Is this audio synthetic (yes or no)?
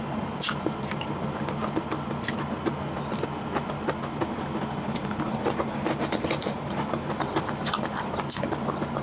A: no